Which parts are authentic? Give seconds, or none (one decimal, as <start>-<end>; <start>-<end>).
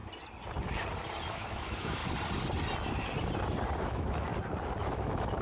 0.0-1.3; 2.0-3.8; 4.3-4.8